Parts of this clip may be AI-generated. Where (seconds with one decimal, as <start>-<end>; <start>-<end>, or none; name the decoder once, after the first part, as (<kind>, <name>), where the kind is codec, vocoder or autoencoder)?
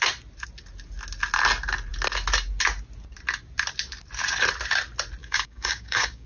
5.2-6.3 (codec, DAC)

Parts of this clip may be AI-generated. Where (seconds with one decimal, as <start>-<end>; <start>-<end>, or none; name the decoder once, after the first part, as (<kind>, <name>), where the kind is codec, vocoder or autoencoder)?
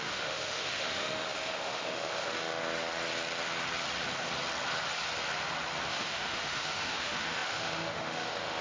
0.0-2.6 (autoencoder, DAC-VAE); 5.9-8.6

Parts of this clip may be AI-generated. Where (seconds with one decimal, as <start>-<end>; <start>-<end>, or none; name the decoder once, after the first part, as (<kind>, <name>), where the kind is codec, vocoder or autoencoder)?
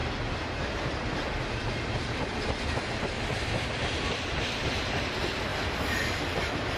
0.0-6.8 (vocoder, BigVGAN v2)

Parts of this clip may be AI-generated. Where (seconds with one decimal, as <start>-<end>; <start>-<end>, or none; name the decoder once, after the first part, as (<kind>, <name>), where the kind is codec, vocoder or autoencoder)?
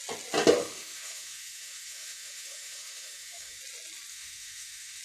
0.6-3.6 (autoencoder, DAC-VAE); 4.1-5.0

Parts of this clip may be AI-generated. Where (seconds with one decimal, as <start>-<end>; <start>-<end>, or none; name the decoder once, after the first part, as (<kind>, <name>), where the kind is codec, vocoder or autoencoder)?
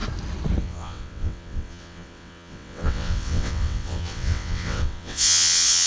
0.6-5.9 (vocoder, WaveNeXt)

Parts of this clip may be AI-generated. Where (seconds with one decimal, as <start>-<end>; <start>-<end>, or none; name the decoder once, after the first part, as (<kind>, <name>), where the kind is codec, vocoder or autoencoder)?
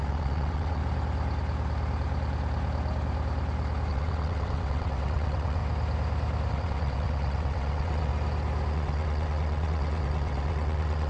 0.0-0.8 (vocoder, WaveNeXt); 3.9-5.6; 6.5-8.1; 8.7-11.1